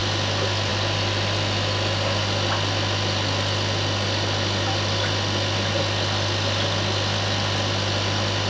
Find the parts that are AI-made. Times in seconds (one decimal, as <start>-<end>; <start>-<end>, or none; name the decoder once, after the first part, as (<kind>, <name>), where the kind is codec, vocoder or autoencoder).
none